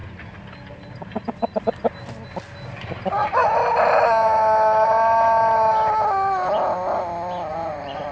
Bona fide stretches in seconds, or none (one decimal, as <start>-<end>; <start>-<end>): 0.0-7.5